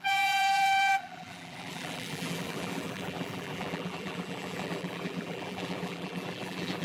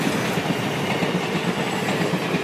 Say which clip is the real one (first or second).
second